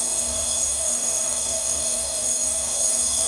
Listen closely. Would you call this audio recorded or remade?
remade